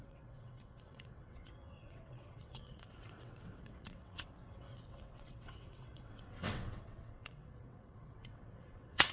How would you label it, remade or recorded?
remade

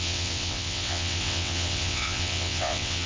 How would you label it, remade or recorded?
remade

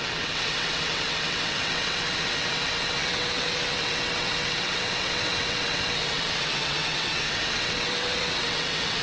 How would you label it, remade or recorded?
remade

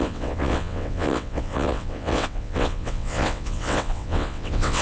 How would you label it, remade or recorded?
remade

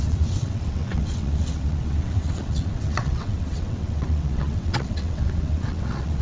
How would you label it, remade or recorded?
remade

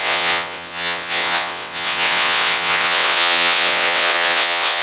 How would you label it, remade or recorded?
remade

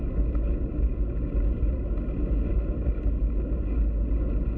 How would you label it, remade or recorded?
recorded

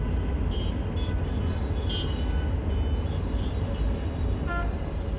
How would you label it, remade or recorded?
recorded